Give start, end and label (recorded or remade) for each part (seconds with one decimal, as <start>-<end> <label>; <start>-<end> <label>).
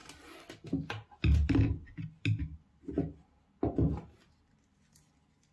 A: 0.0-5.5 recorded